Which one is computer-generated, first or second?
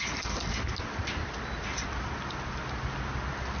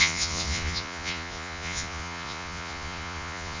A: second